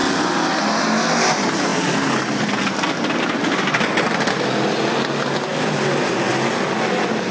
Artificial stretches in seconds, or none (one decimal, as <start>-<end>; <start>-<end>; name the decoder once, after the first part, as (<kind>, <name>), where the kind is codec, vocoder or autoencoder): none